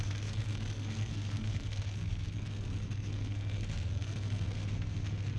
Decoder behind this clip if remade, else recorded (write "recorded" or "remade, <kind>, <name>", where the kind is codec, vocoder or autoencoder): remade, codec, SNAC